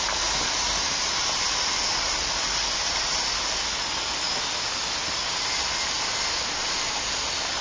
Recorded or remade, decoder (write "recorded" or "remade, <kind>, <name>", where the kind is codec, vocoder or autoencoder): recorded